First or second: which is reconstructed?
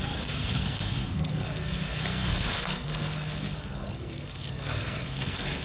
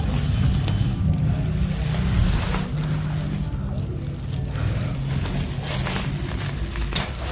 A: first